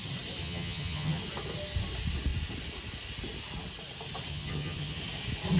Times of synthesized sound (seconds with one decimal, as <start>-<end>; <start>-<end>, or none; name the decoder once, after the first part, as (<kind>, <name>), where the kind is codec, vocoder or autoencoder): 0.4-1.2 (vocoder, HiFi-GAN); 4.3-5.0